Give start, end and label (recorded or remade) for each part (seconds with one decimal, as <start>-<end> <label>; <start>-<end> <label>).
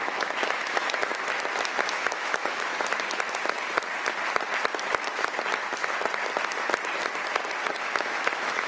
0.0-1.1 remade; 1.1-1.9 recorded; 1.9-2.7 remade; 2.7-7.8 recorded; 7.8-8.7 remade